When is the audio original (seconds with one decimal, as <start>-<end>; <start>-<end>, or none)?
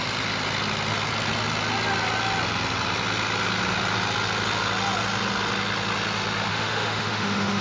0.0-6.5